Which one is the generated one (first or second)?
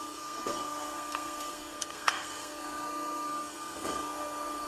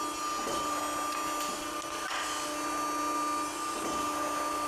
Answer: first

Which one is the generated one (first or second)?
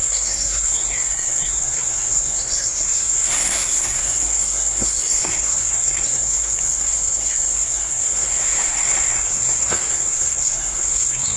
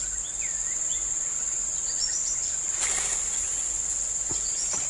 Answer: first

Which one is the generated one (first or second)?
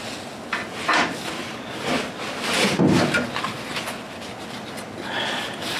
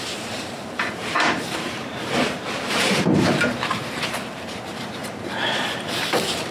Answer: second